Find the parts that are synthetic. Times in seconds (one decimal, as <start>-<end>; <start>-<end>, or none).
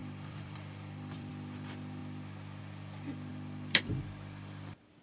0.0-1.3; 3.3-3.9